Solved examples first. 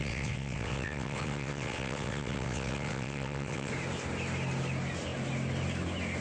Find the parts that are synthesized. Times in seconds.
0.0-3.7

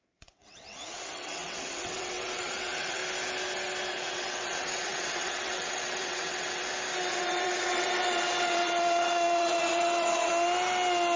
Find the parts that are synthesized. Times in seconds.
0.0-3.0; 3.9-6.6; 7.1-10.3

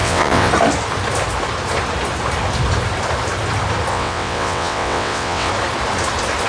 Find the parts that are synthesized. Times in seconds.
0.0-0.5; 3.9-5.5

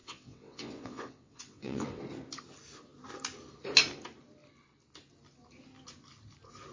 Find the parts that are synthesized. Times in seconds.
0.0-2.0

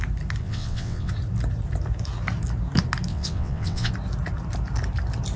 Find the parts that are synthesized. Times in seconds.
0.4-1.1; 3.1-3.9